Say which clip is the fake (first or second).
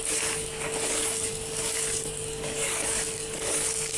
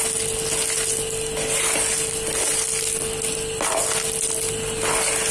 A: first